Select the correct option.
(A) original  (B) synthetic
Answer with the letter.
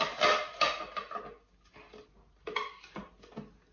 A